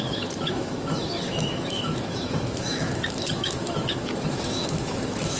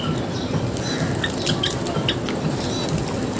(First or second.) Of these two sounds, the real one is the second